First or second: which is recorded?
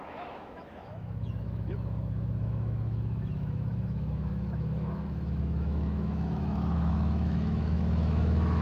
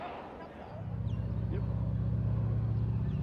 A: second